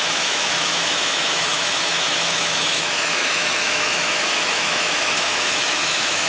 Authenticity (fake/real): fake